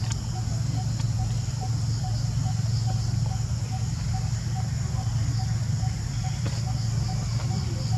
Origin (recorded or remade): recorded